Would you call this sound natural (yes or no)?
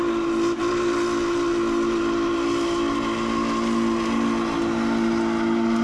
yes